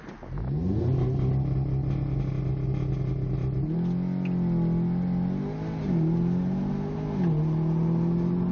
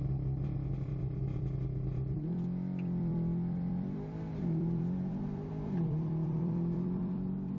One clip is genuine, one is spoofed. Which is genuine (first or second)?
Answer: first